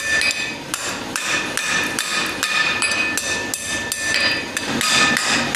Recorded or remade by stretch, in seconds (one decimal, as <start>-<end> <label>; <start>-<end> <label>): 0.0-5.6 recorded